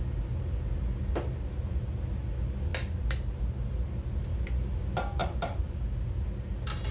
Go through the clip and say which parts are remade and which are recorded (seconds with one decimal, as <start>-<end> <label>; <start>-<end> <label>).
0.0-5.2 recorded; 5.2-6.2 remade; 6.2-6.9 recorded